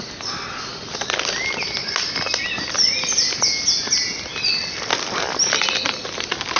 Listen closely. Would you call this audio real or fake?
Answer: real